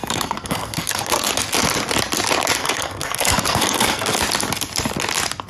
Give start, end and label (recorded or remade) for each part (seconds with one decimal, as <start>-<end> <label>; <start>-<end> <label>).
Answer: 0.0-1.3 remade; 1.3-2.6 recorded; 2.6-4.2 remade; 4.2-5.5 recorded

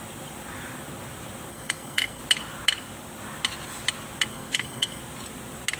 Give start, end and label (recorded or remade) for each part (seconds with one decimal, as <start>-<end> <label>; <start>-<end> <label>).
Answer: 0.0-1.5 recorded; 1.5-2.2 remade; 2.2-4.3 recorded; 4.3-5.0 remade; 5.0-5.8 recorded